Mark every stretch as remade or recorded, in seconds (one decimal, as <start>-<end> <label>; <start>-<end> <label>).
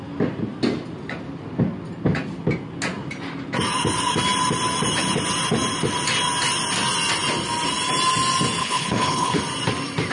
0.0-8.6 recorded; 8.6-9.4 remade; 9.4-10.1 recorded